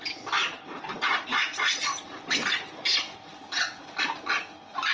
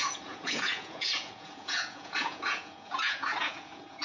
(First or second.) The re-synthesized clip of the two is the second